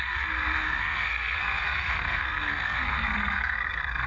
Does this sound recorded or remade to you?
remade